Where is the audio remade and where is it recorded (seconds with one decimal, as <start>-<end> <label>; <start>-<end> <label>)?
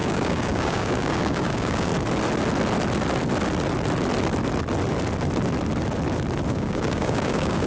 0.0-1.9 remade; 1.9-6.5 recorded; 6.5-7.7 remade